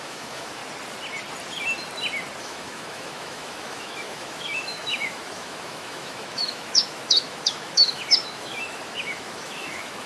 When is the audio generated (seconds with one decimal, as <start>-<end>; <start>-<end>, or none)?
0.0-0.6; 2.4-10.1